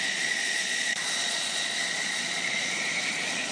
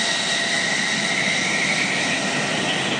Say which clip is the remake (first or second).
first